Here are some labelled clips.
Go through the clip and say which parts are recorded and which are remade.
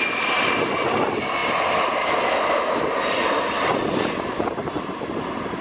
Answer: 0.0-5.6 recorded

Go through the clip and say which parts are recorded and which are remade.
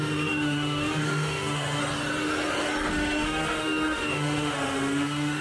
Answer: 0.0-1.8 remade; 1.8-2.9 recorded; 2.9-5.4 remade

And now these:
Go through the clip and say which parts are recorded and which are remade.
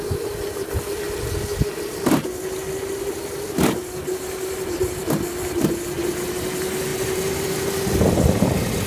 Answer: 0.0-6.9 recorded; 6.9-8.1 remade; 8.1-8.9 recorded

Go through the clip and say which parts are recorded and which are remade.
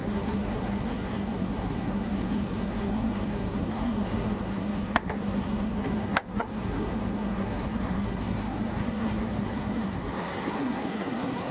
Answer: 0.0-11.5 remade